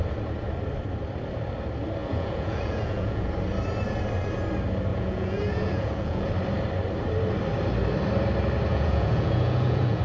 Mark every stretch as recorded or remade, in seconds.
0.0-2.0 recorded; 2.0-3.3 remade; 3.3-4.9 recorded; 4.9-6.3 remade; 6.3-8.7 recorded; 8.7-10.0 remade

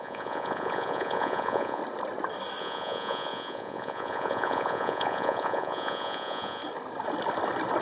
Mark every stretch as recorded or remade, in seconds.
0.0-1.8 remade; 1.8-2.6 recorded; 2.6-6.6 remade; 6.6-7.8 recorded

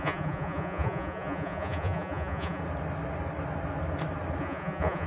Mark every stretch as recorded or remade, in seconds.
0.0-2.6 remade; 2.6-4.4 recorded; 4.4-5.1 remade